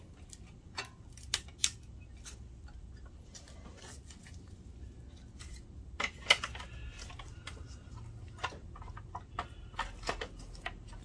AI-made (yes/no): no